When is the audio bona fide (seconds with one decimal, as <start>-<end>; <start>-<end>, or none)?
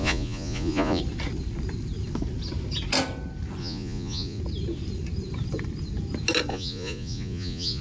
1.0-3.6; 4.4-6.5